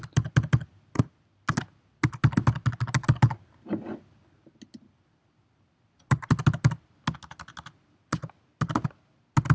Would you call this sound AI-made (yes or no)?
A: no